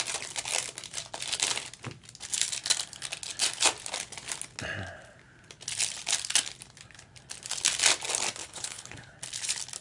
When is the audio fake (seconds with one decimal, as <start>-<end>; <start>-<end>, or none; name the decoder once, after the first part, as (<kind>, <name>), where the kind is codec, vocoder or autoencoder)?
8.4-9.1 (codec, HILCodec)